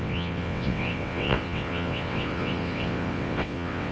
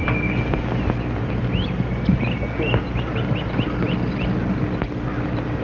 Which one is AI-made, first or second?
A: first